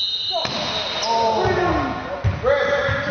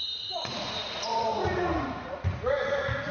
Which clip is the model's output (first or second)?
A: second